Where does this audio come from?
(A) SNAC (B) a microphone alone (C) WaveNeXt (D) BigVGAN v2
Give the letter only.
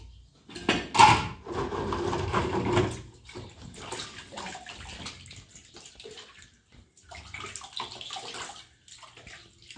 B